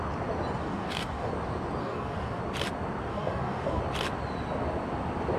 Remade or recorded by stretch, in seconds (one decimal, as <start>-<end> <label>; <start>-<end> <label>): 0.0-0.6 recorded; 0.6-1.3 remade; 1.3-1.8 recorded; 1.8-2.4 remade; 2.4-3.1 recorded; 3.1-3.8 remade; 3.8-5.4 recorded